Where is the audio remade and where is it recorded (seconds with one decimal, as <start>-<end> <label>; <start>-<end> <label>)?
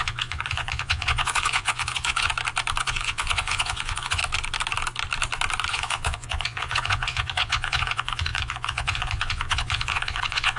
0.0-2.3 remade; 2.3-2.8 recorded; 2.8-4.2 remade; 4.2-5.7 recorded; 5.7-10.6 remade